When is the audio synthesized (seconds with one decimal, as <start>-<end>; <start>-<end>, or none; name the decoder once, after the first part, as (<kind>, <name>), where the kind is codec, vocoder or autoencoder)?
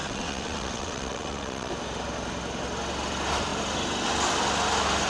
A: 0.0-1.7 (vocoder, WaveNeXt)